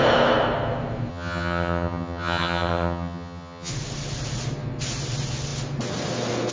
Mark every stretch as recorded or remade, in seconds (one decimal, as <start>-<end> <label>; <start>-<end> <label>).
0.0-1.1 recorded; 1.1-3.7 remade; 3.7-6.5 recorded